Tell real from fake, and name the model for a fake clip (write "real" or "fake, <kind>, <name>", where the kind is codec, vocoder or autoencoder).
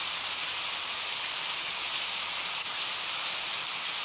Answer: real